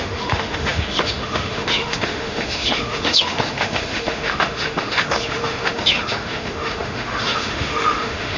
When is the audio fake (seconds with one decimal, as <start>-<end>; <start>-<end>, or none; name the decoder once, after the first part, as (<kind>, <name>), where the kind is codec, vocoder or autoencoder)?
0.0-8.4 (autoencoder, DAC-VAE)